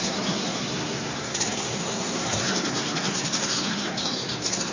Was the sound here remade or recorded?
remade